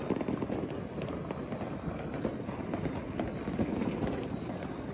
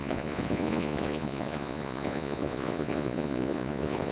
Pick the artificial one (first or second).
second